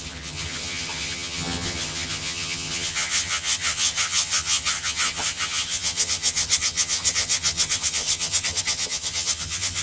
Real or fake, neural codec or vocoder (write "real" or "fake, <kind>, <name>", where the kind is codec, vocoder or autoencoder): fake, vocoder, HiFi-GAN